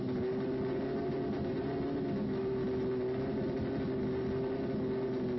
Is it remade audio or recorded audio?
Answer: recorded